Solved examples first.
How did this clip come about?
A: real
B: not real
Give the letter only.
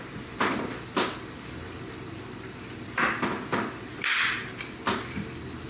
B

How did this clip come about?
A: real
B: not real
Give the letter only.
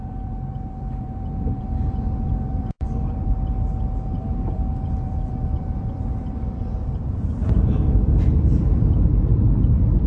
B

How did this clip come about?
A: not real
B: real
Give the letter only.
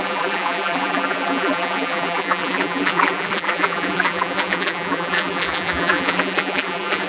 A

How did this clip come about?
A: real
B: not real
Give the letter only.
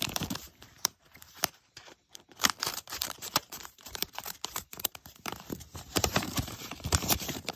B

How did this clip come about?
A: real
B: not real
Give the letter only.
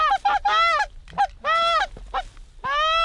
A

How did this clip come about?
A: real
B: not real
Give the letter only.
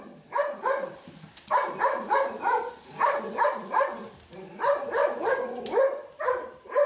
B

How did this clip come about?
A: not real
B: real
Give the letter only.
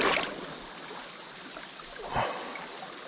B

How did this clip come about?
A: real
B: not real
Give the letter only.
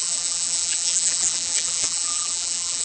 B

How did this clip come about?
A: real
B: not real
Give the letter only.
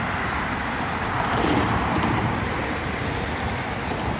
A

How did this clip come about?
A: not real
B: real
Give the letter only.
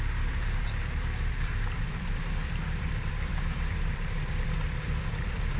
A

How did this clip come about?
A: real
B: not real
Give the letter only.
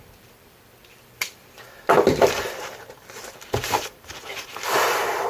B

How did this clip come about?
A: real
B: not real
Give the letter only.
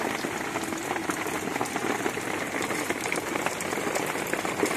A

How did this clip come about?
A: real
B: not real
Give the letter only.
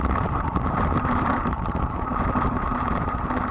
B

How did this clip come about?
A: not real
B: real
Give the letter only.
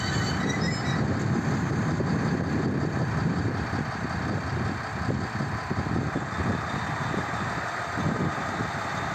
B